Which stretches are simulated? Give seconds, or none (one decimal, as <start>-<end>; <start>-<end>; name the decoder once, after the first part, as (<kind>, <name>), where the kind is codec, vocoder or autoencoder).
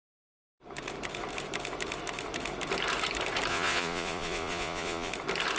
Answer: 3.5-5.1 (vocoder, Vocos)